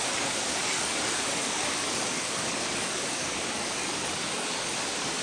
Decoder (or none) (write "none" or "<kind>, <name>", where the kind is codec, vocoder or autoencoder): codec, DAC